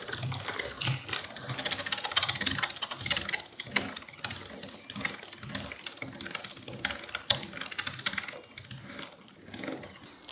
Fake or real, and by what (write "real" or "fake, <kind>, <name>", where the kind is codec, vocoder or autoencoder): real